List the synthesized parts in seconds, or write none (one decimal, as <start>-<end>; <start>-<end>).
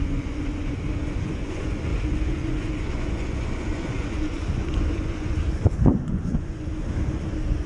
0.0-7.7